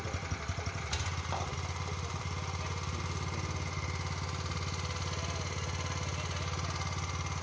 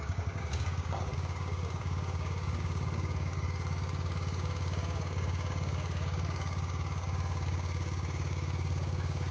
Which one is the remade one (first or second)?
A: second